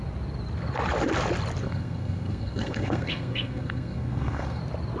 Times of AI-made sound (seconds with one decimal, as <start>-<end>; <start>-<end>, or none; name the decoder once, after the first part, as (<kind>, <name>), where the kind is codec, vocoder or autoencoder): 1.6-4.6 (codec, SNAC)